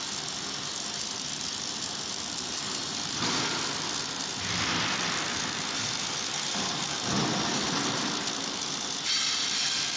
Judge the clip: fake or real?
real